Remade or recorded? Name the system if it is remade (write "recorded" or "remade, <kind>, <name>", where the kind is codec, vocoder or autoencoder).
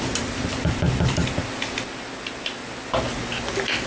recorded